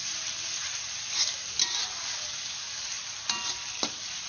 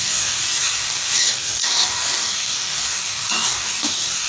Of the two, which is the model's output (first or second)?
second